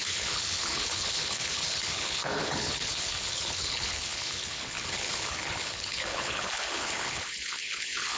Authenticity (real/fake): fake